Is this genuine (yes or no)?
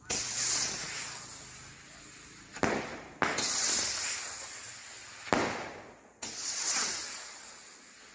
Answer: yes